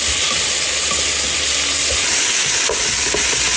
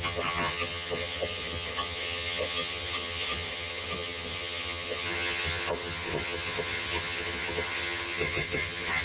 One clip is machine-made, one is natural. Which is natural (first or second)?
first